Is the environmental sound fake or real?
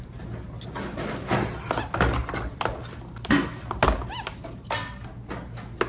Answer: real